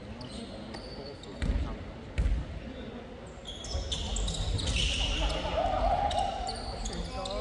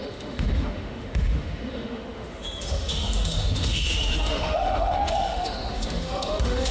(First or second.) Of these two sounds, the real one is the first